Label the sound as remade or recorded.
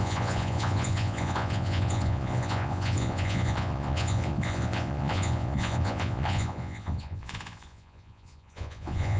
remade